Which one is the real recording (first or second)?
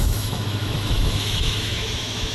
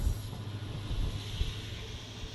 second